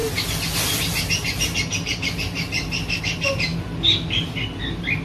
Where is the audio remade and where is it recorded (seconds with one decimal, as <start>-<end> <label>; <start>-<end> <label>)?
0.0-5.0 recorded